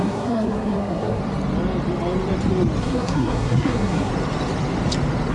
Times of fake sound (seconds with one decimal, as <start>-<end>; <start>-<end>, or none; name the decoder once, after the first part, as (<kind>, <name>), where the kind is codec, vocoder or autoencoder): 0.0-1.2 (codec, SNAC); 2.8-4.1